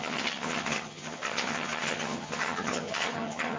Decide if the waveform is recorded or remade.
remade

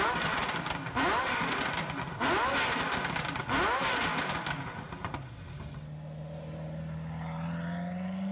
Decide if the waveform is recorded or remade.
recorded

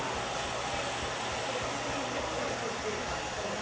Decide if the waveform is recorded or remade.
recorded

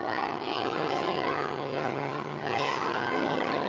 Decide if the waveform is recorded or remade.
remade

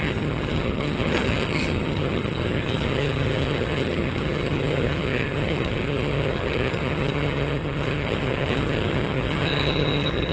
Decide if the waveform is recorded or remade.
remade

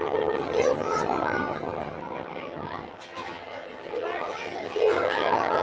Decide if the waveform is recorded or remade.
remade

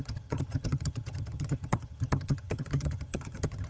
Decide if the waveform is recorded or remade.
remade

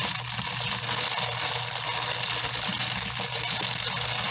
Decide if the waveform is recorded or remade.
recorded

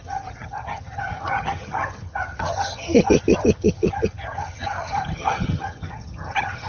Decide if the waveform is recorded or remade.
remade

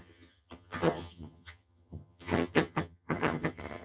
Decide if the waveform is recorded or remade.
remade